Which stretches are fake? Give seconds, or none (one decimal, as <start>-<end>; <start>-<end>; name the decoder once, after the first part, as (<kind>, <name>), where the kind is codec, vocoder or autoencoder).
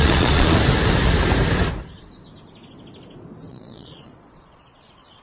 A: 0.0-0.6 (vocoder, Vocos); 3.5-5.2